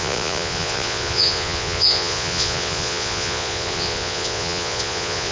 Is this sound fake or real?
fake